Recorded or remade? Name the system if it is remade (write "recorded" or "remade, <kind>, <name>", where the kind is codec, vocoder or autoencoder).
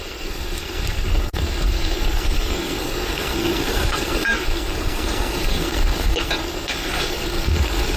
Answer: remade, codec, SNAC